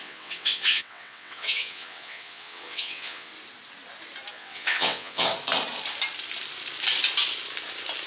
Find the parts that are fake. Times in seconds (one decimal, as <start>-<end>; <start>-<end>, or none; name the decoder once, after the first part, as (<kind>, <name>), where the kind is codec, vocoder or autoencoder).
0.0-3.3 (vocoder, WaveNeXt); 4.3-5.3